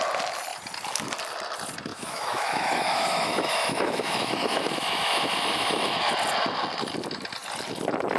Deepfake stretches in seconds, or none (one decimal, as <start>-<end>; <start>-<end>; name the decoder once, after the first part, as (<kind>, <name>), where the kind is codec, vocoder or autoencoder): 1.9-6.1 (autoencoder, DAC-VAE)